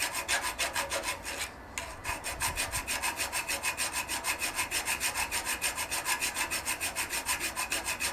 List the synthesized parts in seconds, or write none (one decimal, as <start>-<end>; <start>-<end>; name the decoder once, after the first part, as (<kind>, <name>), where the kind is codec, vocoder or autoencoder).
2.0-2.6 (vocoder, BigVGAN v2); 4.4-5.8